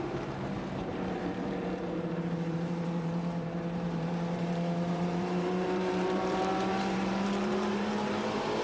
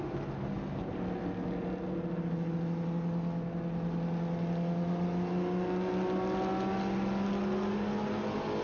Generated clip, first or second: first